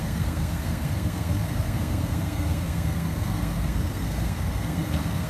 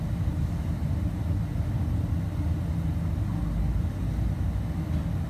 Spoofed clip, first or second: first